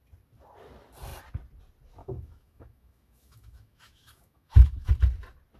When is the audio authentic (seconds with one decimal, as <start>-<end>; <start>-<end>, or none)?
0.0-2.0; 4.9-5.6